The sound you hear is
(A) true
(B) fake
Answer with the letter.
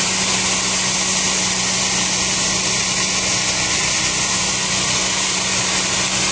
A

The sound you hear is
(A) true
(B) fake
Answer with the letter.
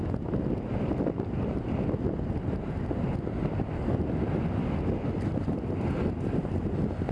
A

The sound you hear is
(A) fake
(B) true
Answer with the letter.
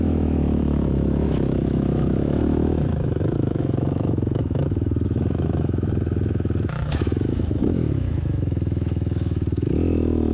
A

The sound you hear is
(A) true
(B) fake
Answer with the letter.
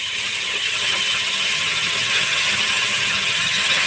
B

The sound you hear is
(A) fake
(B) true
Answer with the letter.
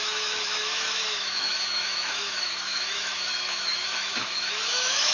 A